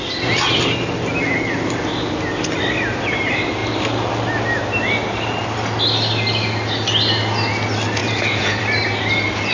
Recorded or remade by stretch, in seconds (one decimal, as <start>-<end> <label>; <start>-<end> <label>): 0.0-8.0 recorded; 8.0-8.6 remade; 8.6-9.5 recorded